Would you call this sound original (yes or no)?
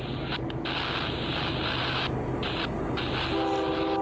yes